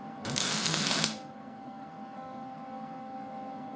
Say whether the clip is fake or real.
fake